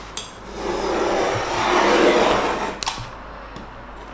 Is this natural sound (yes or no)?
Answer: yes